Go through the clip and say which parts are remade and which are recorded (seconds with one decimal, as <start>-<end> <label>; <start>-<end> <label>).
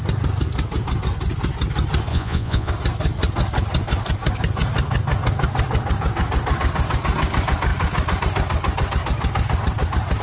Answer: 0.0-2.1 recorded; 2.1-2.7 remade; 2.7-10.2 recorded